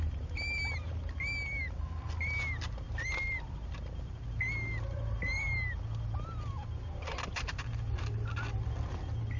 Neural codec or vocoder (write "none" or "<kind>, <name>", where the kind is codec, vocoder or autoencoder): none